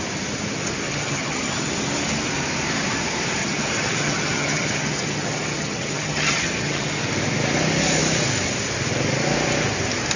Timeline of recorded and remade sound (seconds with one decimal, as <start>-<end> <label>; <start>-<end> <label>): 0.0-0.9 recorded; 0.9-1.7 remade; 1.7-3.4 recorded; 3.4-6.9 remade; 6.9-10.2 recorded